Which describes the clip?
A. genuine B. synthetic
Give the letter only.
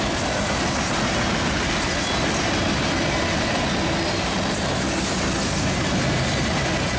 A